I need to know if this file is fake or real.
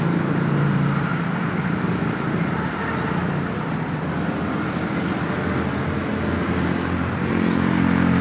real